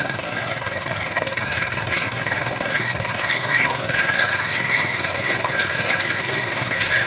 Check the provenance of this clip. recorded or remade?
remade